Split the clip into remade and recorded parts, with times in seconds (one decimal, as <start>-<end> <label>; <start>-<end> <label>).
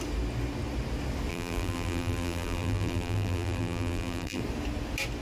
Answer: 0.0-1.3 recorded; 1.3-4.4 remade; 4.4-5.2 recorded